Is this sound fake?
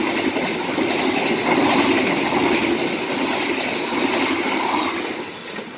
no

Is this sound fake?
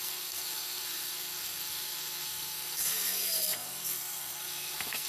yes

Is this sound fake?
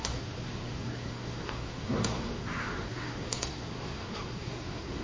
yes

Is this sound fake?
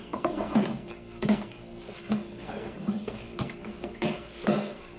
yes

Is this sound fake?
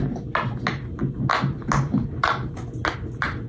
no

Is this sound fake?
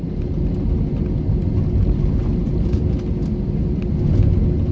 no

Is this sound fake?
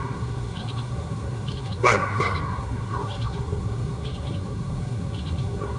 yes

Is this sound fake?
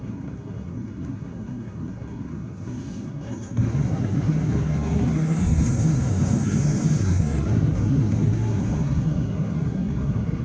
yes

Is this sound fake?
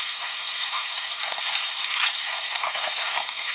yes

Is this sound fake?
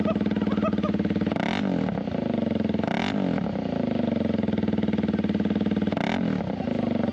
no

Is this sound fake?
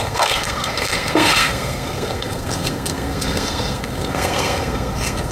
yes